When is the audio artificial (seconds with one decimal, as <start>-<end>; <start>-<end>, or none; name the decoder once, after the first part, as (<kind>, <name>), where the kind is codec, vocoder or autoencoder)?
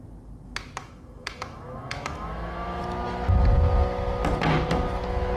0.8-2.8 (autoencoder, DAC-VAE)